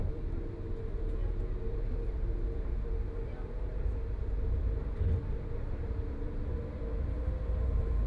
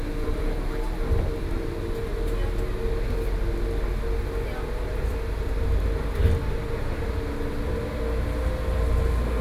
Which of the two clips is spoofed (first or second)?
first